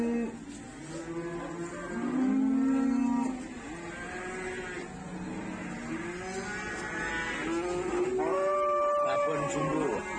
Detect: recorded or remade recorded